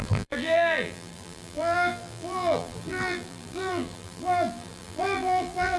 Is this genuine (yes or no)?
no